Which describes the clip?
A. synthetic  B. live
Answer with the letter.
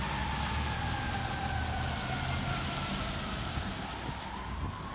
B